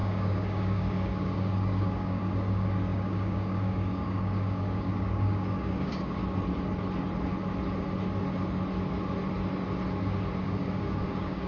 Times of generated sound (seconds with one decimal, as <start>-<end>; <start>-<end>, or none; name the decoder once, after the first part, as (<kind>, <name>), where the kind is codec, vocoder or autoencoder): 0.0-6.2 (codec, DAC); 10.4-11.5